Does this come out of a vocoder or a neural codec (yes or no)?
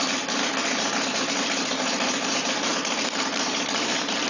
yes